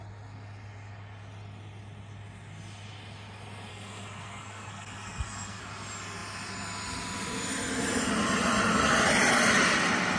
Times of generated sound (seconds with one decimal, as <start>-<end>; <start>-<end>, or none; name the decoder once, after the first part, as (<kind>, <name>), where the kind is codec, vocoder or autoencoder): 3.7-5.6 (codec, SNAC)